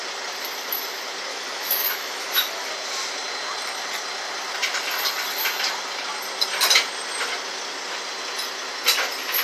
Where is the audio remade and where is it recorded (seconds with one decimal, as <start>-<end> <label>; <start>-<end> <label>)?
0.0-1.3 recorded; 1.3-2.7 remade; 2.7-9.4 recorded